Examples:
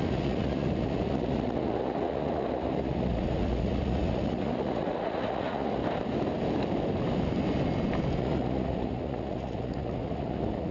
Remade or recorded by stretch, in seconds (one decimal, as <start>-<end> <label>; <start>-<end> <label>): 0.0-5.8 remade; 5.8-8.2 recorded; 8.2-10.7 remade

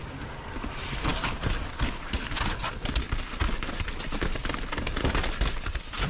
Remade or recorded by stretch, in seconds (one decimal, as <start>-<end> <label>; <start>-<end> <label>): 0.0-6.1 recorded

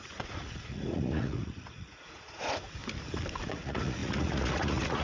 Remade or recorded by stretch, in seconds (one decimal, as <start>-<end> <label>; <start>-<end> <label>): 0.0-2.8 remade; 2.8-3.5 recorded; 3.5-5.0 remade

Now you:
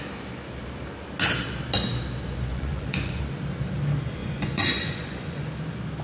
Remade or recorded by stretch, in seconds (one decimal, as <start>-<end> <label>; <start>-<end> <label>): 0.0-2.5 recorded; 2.5-3.2 remade; 3.2-4.2 recorded; 4.2-5.5 remade; 5.5-6.0 recorded

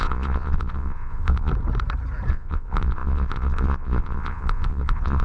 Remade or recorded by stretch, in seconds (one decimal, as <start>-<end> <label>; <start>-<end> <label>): 0.0-1.5 remade; 1.5-2.3 recorded; 2.3-5.2 remade